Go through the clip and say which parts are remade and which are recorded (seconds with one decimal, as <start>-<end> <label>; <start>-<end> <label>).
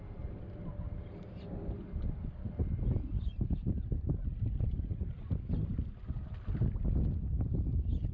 0.0-8.1 recorded